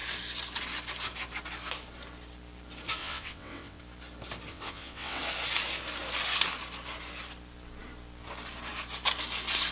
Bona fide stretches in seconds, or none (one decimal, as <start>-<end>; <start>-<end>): 0.0-3.0; 3.8-4.5; 5.2-9.7